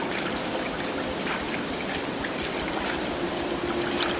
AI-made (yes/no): no